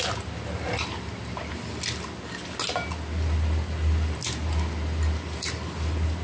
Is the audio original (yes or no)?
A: yes